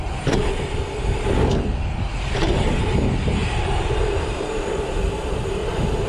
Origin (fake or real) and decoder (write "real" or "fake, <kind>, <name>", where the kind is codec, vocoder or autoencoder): real